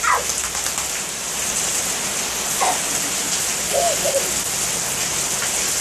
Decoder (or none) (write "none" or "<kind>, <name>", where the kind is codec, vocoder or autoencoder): none